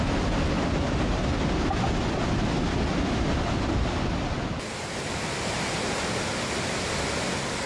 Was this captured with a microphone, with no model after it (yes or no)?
yes